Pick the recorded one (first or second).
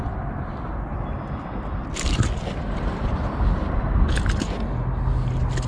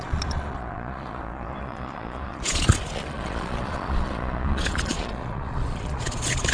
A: first